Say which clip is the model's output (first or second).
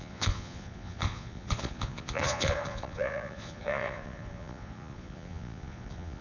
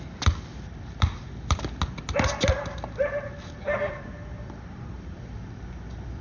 first